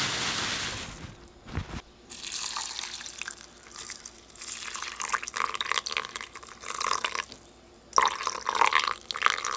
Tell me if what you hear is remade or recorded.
recorded